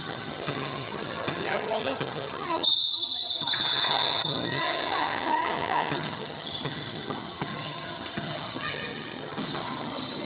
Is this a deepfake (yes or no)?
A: yes